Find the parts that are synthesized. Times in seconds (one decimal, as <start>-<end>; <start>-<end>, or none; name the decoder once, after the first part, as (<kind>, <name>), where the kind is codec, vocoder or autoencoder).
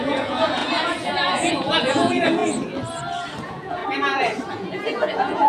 0.0-2.4 (vocoder, Vocos); 3.4-3.8; 4.5-5.5